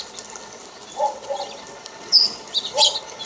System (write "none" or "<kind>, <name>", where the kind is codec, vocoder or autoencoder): none